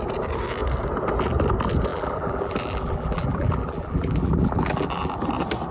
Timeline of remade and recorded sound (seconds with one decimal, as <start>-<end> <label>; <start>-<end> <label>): 0.0-1.9 recorded; 1.9-5.2 remade; 5.2-5.7 recorded